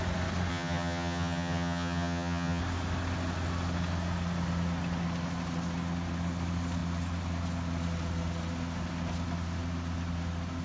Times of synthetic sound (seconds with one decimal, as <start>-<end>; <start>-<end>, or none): 0.5-2.6